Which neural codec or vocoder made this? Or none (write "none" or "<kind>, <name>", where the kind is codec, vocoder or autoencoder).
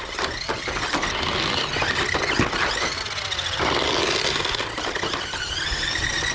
none